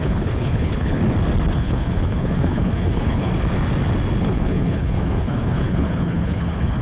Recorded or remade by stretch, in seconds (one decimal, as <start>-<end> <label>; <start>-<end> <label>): 0.0-1.0 remade; 1.0-1.5 recorded; 1.5-3.3 remade; 3.3-4.2 recorded; 4.2-6.8 remade